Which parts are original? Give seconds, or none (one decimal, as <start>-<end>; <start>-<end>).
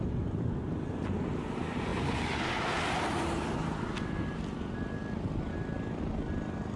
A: 0.0-6.8